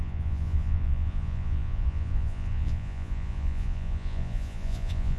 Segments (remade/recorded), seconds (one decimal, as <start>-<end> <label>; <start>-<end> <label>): 0.0-5.2 remade